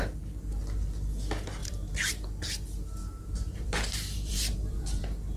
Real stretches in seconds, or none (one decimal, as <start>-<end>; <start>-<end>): 0.0-1.6; 2.1-3.0; 5.0-5.4